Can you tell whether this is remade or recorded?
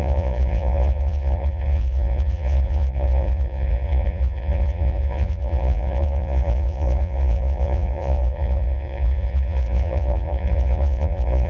remade